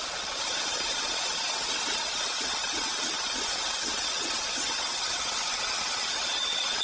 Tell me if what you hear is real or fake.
fake